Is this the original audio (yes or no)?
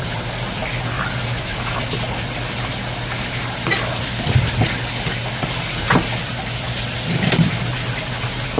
yes